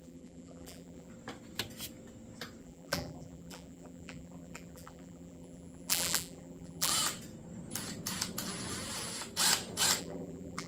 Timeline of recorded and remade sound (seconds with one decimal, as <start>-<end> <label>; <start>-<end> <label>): 0.0-1.1 remade; 1.1-2.6 recorded; 2.6-6.9 remade; 6.9-10.0 recorded; 10.0-10.7 remade